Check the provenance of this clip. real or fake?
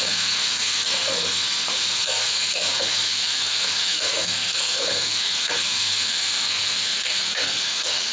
fake